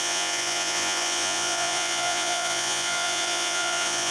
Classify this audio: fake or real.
fake